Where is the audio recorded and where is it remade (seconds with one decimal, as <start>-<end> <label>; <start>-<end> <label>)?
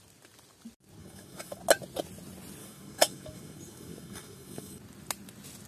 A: 0.0-1.0 recorded; 1.0-1.6 remade; 1.6-2.6 recorded; 2.6-4.8 remade; 4.8-5.7 recorded